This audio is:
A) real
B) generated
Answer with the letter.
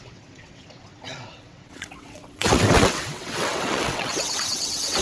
B